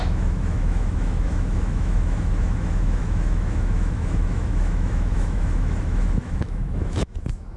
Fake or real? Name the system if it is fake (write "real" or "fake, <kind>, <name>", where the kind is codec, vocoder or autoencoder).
fake, autoencoder, DAC-VAE